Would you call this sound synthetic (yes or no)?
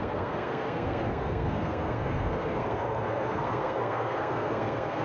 yes